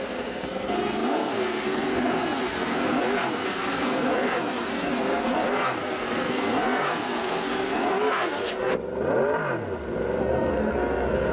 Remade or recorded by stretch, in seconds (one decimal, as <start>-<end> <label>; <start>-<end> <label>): 0.0-8.7 remade; 8.7-10.2 recorded; 10.2-11.3 remade